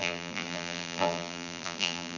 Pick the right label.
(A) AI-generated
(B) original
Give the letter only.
A